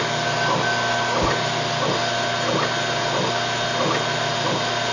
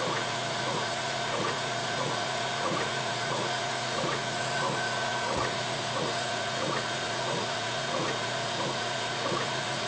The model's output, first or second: second